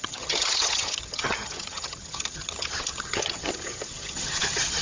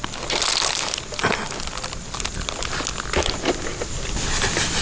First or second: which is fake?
first